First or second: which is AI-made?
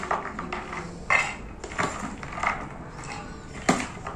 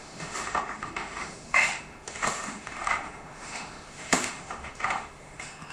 second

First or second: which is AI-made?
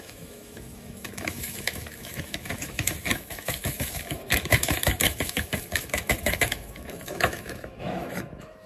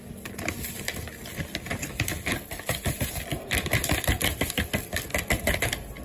first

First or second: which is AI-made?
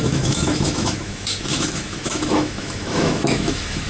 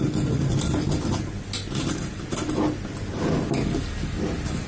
first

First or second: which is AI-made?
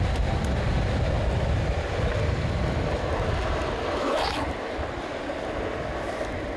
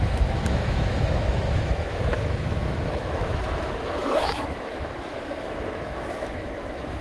second